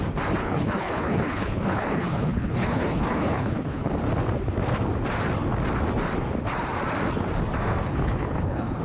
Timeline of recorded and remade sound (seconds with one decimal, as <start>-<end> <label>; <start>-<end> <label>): 0.0-0.4 recorded; 0.4-3.9 remade; 3.9-7.9 recorded; 7.9-8.8 remade

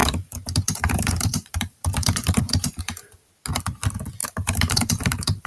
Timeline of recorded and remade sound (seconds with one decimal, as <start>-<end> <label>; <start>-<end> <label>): 0.0-3.3 remade; 3.3-4.2 recorded; 4.2-5.5 remade

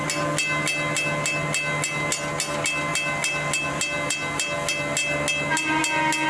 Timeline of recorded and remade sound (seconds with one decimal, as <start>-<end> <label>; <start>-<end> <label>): 0.0-6.3 recorded